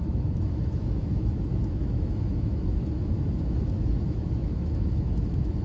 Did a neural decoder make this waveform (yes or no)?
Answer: yes